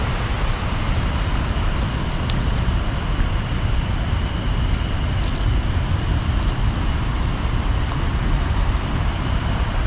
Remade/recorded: recorded